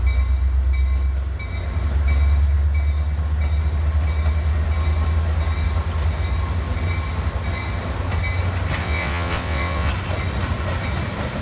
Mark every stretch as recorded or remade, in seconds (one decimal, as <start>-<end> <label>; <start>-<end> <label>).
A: 0.0-8.8 recorded; 8.8-9.9 remade; 9.9-11.4 recorded